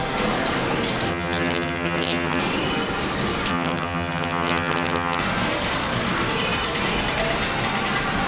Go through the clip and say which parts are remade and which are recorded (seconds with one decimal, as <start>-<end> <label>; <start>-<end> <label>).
0.0-1.1 recorded; 1.1-2.4 remade; 2.4-3.5 recorded; 3.5-5.2 remade; 5.2-8.3 recorded